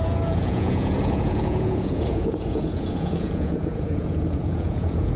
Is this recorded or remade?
remade